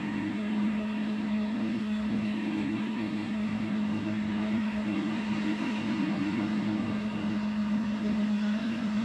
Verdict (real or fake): fake